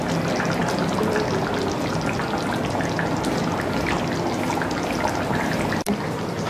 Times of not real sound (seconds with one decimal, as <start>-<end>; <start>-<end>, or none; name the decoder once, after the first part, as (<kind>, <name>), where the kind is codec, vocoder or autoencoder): none